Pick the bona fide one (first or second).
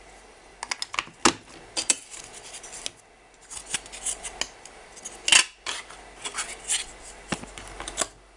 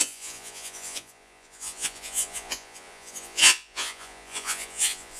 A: first